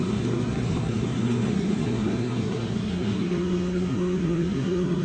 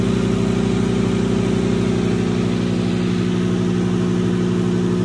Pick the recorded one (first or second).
second